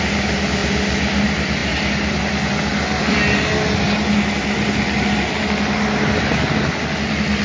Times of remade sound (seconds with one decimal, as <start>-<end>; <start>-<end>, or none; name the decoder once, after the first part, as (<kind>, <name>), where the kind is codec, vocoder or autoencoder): none